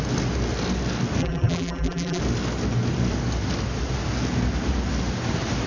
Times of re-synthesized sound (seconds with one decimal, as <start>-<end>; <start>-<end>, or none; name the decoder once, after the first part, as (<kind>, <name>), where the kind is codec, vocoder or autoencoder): 1.2-2.2 (vocoder, BigVGAN v2)